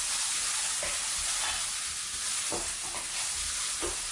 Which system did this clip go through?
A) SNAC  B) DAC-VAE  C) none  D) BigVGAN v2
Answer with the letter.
C